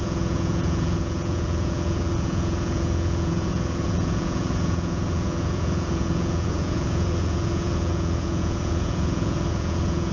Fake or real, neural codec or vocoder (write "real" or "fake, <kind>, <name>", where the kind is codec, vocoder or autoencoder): fake, vocoder, Vocos